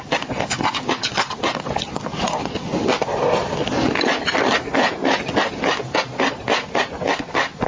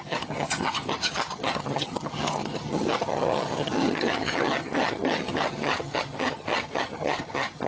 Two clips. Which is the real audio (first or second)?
first